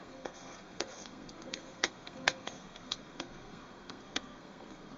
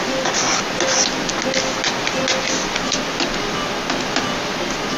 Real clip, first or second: second